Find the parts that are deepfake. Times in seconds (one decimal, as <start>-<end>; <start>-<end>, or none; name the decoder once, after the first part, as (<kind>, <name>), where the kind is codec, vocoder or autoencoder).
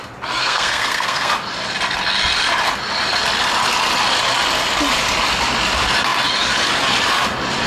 0.4-1.3 (codec, SNAC)